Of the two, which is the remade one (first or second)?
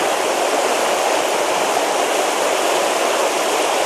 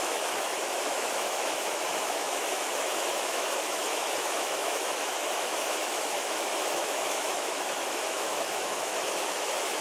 second